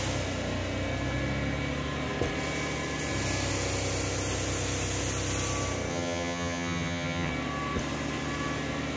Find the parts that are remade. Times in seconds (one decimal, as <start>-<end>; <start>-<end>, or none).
5.9-7.3